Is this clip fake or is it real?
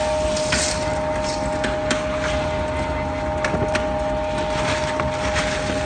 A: real